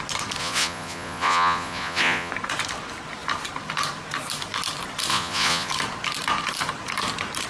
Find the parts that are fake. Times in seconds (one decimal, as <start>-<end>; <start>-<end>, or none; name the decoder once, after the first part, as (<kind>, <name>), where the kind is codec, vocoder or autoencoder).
0.4-2.3 (vocoder, Vocos); 5.1-5.7